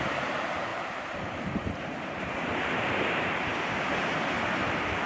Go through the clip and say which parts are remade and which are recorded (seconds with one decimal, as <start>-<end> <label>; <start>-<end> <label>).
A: 0.0-0.7 recorded; 0.7-2.2 remade; 2.2-3.5 recorded; 3.5-5.1 remade